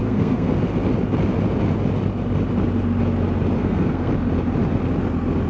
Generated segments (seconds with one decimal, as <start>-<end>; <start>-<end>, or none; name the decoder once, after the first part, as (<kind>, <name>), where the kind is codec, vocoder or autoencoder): 0.0-0.5 (codec, SNAC); 3.6-4.1